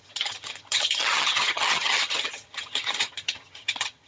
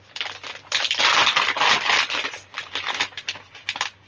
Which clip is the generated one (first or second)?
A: first